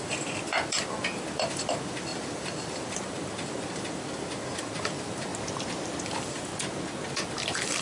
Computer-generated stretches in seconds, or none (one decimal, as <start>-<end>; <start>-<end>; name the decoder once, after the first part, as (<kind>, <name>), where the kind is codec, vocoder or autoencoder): 0.0-5.3 (vocoder, BigVGAN v2); 6.0-6.5; 7.1-7.8